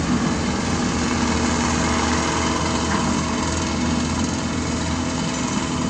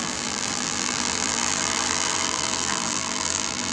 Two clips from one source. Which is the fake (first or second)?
second